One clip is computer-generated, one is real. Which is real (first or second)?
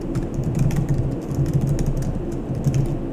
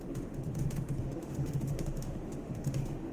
first